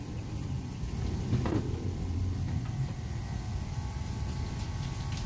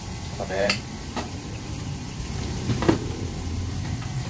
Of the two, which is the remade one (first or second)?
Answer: second